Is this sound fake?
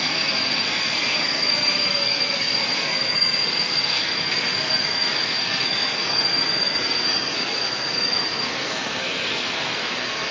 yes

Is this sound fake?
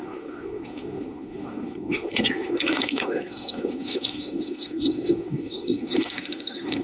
yes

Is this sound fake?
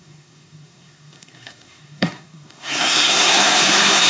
yes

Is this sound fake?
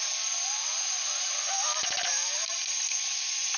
no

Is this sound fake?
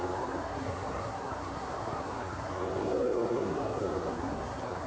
yes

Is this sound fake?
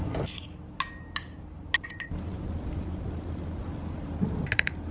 no